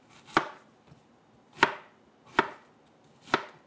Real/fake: real